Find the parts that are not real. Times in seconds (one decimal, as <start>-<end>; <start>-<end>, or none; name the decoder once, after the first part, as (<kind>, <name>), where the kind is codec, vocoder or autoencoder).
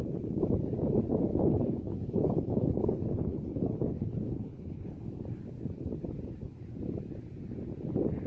1.3-5.1 (codec, HILCodec)